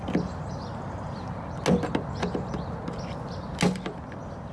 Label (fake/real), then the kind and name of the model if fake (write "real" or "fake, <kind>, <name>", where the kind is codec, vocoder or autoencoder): real